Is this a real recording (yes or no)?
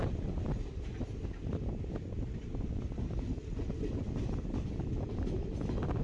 yes